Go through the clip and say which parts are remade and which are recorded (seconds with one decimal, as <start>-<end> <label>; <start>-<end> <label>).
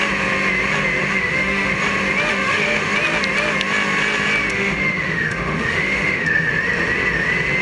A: 0.0-1.0 recorded; 1.0-1.7 remade; 1.7-2.3 recorded; 2.3-2.9 remade; 2.9-4.5 recorded; 4.5-6.5 remade; 6.5-7.6 recorded